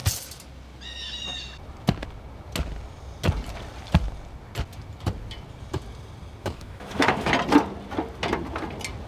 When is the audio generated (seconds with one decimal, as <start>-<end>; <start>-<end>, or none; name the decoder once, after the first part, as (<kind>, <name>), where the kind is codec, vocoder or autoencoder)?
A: 6.4-7.3 (autoencoder, DAC-VAE)